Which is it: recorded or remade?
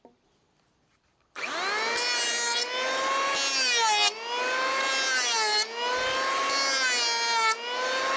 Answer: recorded